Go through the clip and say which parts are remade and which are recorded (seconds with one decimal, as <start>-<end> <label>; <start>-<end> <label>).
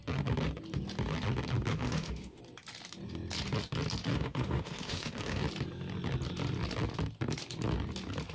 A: 0.0-1.7 recorded; 1.7-2.4 remade; 2.4-4.1 recorded; 4.1-5.4 remade; 5.4-8.3 recorded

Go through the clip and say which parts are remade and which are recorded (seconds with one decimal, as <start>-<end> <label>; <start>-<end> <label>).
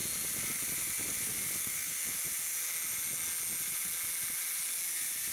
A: 0.0-1.6 recorded; 1.6-2.0 remade; 2.0-5.3 recorded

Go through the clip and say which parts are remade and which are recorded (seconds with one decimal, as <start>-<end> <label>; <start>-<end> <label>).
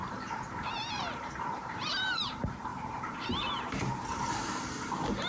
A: 0.0-2.3 remade; 2.3-2.7 recorded; 2.7-3.8 remade; 3.8-5.3 recorded